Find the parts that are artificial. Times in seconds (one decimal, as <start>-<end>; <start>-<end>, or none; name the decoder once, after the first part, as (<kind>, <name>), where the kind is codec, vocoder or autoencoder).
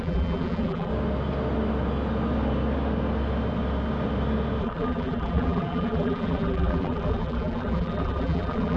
0.0-0.9 (vocoder, BigVGAN v2); 4.6-8.8